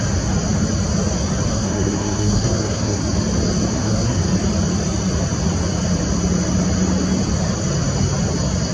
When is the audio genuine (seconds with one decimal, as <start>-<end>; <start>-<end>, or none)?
0.0-1.5; 3.0-3.7; 4.2-8.7